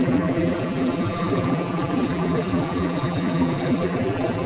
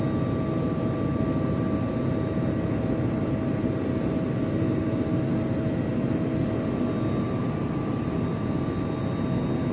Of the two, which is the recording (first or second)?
second